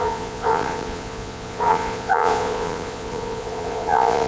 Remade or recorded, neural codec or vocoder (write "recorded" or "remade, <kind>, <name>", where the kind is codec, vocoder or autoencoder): remade, vocoder, Vocos